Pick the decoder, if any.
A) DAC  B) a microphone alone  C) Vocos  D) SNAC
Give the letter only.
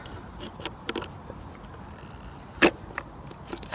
B